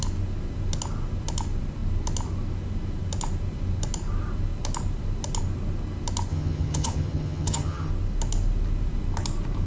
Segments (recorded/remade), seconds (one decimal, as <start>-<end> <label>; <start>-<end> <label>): 0.0-6.3 recorded; 6.3-7.9 remade; 7.9-9.7 recorded